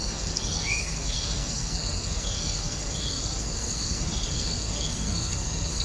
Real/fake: fake